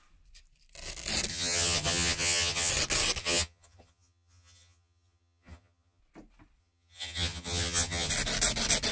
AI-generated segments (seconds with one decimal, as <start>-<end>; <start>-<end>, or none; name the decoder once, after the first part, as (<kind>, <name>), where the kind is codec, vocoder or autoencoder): 1.3-2.7 (vocoder, HiFi-GAN); 3.2-6.0; 6.6-8.1